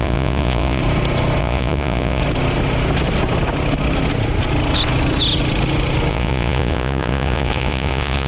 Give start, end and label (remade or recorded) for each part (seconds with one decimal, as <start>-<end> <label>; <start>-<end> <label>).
0.0-0.8 remade; 0.8-1.4 recorded; 1.4-2.2 remade; 2.2-6.1 recorded; 6.1-8.3 remade